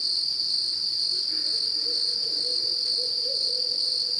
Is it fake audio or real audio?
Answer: real